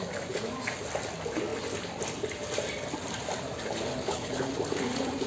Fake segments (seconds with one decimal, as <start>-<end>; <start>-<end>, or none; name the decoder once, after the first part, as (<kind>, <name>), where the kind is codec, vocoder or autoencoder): 3.9-4.5 (codec, HILCodec)